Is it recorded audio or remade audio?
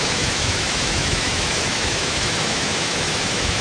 remade